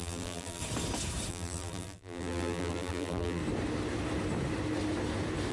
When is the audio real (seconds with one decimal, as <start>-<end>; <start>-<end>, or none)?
0.6-1.3; 3.4-5.5